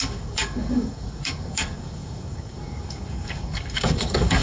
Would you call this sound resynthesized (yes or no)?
yes